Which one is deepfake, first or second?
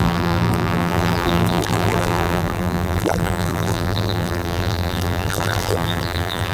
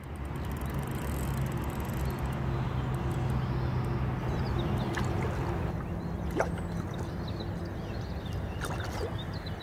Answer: first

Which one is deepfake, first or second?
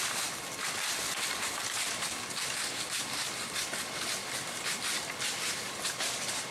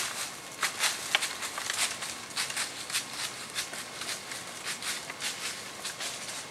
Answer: first